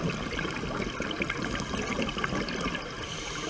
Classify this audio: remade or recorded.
recorded